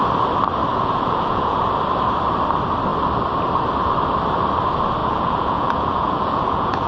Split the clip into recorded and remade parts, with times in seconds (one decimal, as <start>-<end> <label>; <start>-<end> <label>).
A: 0.0-0.7 recorded; 0.7-1.6 remade; 1.6-5.0 recorded; 5.0-6.9 remade